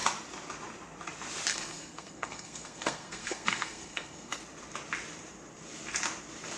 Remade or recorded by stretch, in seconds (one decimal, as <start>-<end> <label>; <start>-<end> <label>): 0.0-1.5 recorded; 1.5-4.4 remade; 4.4-6.6 recorded